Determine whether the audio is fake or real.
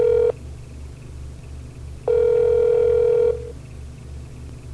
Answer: real